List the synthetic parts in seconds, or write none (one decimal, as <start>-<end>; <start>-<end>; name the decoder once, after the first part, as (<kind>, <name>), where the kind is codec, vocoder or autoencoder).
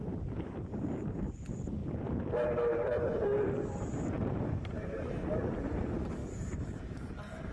0.0-7.5 (vocoder, BigVGAN v2)